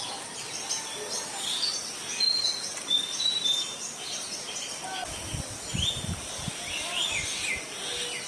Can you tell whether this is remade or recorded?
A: recorded